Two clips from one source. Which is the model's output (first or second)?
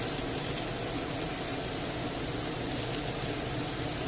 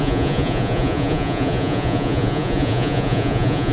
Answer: second